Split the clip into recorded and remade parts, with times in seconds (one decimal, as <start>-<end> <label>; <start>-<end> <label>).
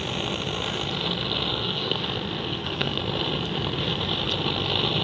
0.0-1.5 recorded; 1.5-2.0 remade; 2.0-2.4 recorded; 2.4-3.0 remade; 3.0-5.0 recorded